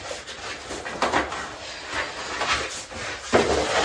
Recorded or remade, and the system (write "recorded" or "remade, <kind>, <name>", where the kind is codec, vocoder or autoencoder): recorded